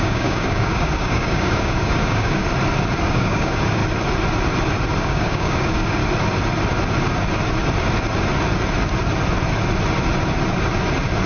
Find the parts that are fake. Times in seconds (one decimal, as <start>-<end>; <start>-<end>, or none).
0.0-2.4; 3.0-3.8; 5.0-6.0

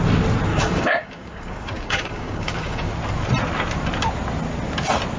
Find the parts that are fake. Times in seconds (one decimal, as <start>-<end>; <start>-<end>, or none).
0.5-2.9

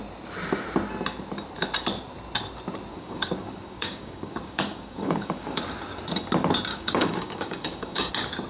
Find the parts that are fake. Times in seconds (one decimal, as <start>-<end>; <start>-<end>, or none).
2.9-5.6; 6.7-8.1